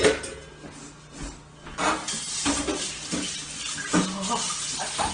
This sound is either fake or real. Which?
real